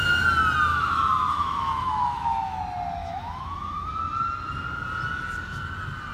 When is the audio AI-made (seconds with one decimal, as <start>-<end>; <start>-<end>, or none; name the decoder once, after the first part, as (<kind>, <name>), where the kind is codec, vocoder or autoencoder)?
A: 0.7-2.6 (autoencoder, DAC-VAE); 3.0-3.9